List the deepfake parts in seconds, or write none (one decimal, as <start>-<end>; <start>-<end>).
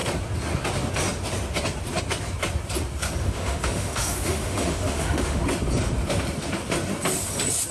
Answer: 3.2-5.4